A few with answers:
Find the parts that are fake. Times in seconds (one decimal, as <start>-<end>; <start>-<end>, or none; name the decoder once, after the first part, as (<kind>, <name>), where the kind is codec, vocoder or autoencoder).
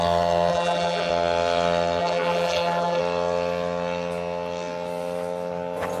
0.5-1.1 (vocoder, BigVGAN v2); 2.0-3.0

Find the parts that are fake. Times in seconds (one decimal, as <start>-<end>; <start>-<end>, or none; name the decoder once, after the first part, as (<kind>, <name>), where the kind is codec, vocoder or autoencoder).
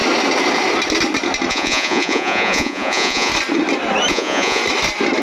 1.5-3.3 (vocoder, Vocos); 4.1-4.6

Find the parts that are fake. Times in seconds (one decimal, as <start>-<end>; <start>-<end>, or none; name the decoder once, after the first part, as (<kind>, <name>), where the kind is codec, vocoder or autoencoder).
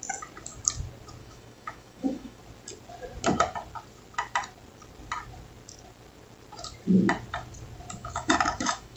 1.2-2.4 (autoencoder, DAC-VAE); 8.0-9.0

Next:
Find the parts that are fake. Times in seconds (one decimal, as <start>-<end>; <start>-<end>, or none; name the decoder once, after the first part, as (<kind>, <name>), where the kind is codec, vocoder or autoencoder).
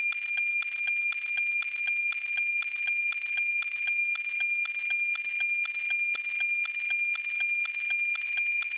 none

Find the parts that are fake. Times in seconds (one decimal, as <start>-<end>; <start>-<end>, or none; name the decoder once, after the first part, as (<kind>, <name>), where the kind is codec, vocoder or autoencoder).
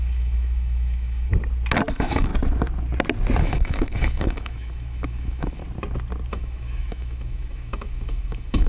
0.0-1.3 (autoencoder, DAC-VAE); 1.9-2.3; 3.4-5.6; 6.3-8.7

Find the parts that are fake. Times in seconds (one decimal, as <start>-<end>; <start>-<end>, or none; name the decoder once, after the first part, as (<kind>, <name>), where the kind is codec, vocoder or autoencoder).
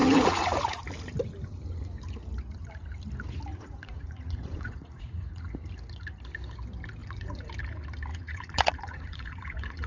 0.0-0.8 (vocoder, Vocos); 3.5-5.4; 7.0-7.5; 8.1-9.9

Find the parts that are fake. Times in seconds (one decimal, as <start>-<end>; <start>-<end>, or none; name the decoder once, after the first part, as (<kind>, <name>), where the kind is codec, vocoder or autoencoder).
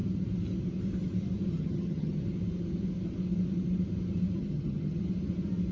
1.5-2.2 (vocoder, HiFi-GAN); 4.4-5.0